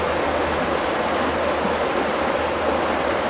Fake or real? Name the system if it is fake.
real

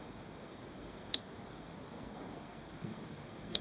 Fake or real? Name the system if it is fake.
fake, codec, SNAC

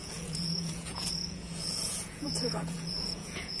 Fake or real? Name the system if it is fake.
fake, vocoder, Vocos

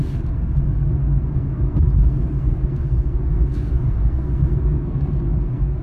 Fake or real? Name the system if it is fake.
fake, codec, SNAC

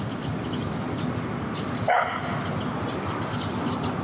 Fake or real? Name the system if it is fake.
real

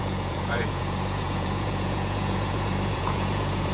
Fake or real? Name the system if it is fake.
fake, vocoder, Vocos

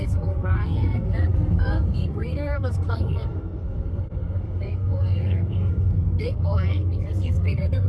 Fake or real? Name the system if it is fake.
fake, codec, SNAC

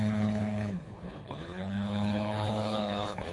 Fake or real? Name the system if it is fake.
fake, codec, HILCodec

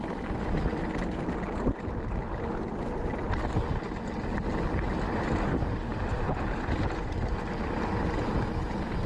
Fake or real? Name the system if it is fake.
real